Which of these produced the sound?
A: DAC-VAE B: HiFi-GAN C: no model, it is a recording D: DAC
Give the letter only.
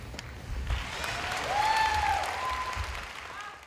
C